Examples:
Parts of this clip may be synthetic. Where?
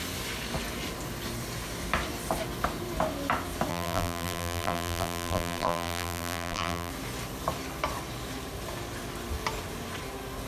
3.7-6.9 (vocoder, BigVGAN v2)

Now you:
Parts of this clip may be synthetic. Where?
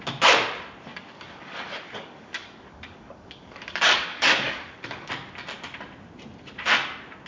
0.9-5.1 (codec, DAC)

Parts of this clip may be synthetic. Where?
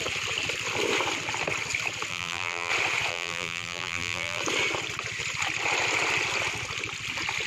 2.1-2.7 (vocoder, BigVGAN v2); 3.1-4.4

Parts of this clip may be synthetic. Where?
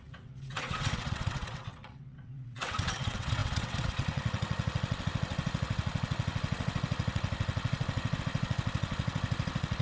0.0-9.8 (vocoder, WaveNeXt)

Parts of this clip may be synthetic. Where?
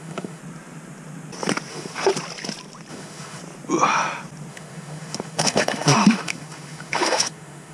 0.0-0.4 (autoencoder, DAC-VAE); 1.7-2.1; 2.9-3.4; 4.5-7.7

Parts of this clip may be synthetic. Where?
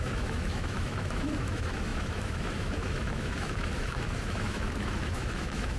0.0-5.8 (autoencoder, DAC-VAE)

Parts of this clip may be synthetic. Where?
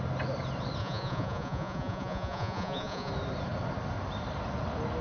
0.8-3.1 (vocoder, Vocos)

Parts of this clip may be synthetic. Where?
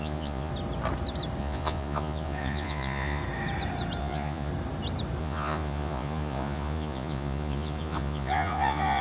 0.0-0.5 (vocoder, Vocos); 1.4-3.2; 4.0-4.5; 5.2-9.0